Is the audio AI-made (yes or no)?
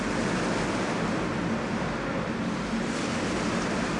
no